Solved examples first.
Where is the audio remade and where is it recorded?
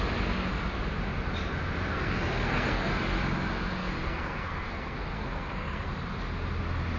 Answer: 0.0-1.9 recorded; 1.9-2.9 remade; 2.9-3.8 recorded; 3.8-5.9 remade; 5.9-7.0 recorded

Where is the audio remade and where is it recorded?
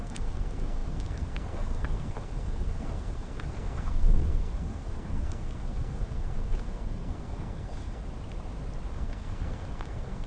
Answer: 0.0-8.0 remade; 8.0-8.9 recorded; 8.9-10.3 remade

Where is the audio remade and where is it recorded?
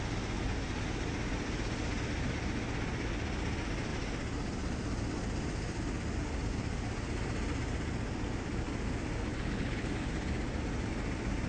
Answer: 0.0-9.3 recorded; 9.3-9.9 remade; 9.9-11.5 recorded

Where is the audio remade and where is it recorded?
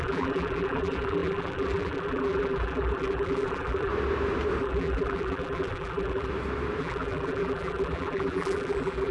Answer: 0.0-3.9 remade; 3.9-4.6 recorded; 4.6-6.3 remade; 6.3-6.8 recorded; 6.8-9.1 remade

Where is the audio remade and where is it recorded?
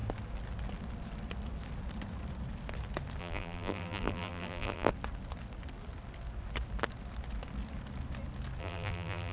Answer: 0.0-3.2 recorded; 3.2-4.9 remade; 4.9-8.6 recorded; 8.6-9.3 remade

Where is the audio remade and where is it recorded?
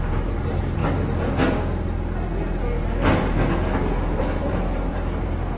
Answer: 0.0-0.8 remade; 0.8-4.2 recorded; 4.2-5.6 remade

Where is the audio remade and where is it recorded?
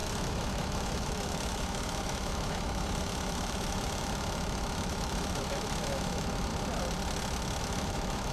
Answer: 0.0-6.5 remade; 6.5-7.6 recorded; 7.6-8.3 remade